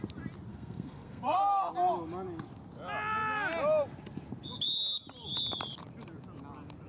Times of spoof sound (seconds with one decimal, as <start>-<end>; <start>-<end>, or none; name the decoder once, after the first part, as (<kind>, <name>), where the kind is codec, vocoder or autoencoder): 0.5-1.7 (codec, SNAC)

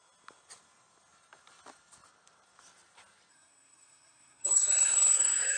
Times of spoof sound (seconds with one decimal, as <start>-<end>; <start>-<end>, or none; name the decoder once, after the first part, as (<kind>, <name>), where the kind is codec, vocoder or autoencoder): 3.3-5.6 (codec, SNAC)

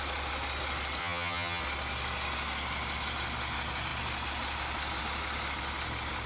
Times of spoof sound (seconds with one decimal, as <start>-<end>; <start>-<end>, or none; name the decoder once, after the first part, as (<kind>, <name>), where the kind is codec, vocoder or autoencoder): 1.0-1.6 (vocoder, HiFi-GAN)

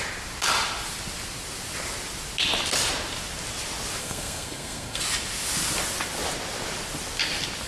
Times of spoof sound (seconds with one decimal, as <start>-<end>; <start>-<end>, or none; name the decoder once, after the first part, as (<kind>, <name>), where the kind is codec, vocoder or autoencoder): 4.0-5.0 (codec, SNAC)

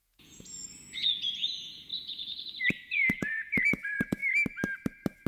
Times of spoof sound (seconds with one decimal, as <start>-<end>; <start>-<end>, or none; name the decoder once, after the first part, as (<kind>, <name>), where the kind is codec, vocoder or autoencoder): 0.0-4.2 (vocoder, Vocos)

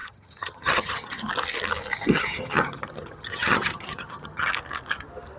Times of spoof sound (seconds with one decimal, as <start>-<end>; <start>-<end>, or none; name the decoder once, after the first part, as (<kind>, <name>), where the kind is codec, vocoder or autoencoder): 0.0-1.3 (vocoder, HiFi-GAN); 2.0-4.5

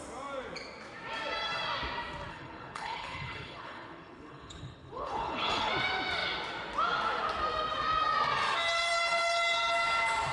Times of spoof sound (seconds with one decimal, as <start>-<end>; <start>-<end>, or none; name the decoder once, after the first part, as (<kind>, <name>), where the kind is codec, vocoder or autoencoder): 2.3-5.7 (codec, HILCodec)

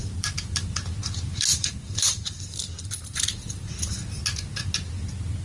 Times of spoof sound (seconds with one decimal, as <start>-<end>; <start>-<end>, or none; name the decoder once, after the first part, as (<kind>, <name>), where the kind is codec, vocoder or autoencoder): 0.0-0.8 (vocoder, BigVGAN v2); 1.5-3.9